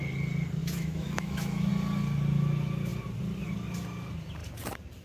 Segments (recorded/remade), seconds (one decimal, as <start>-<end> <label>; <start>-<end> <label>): 0.0-0.6 recorded; 0.6-1.7 remade; 1.7-5.0 recorded